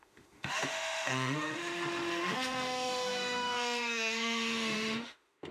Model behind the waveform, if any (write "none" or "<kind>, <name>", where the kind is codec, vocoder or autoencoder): autoencoder, DAC-VAE